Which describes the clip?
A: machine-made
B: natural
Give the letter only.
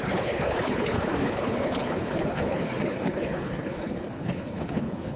A